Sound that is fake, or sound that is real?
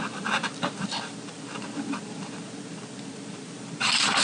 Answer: fake